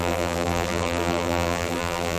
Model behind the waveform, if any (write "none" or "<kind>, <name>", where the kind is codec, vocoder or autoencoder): vocoder, BigVGAN v2